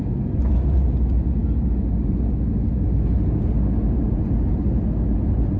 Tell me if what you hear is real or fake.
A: real